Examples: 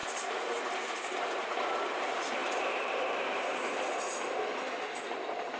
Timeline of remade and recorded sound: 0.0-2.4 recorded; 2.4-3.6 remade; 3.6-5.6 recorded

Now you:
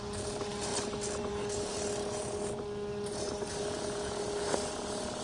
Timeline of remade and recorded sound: 0.0-5.2 recorded

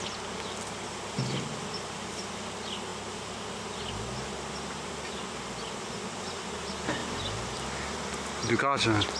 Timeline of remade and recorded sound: 0.0-9.2 recorded

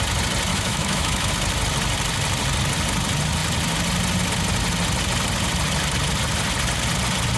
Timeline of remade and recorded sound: 0.0-0.5 recorded; 0.5-1.3 remade; 1.3-7.4 recorded